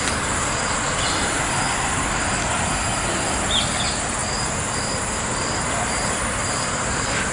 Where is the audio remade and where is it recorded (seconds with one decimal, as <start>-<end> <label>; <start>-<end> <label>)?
0.0-7.3 recorded